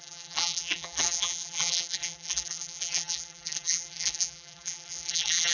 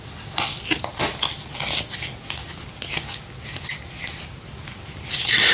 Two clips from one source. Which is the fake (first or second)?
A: first